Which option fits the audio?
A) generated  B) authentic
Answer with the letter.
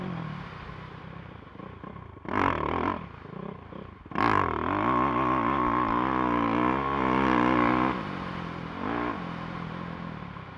B